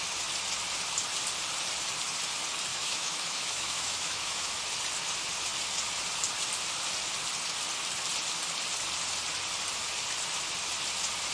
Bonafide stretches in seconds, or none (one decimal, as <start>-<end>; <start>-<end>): 0.0-2.7; 4.5-11.3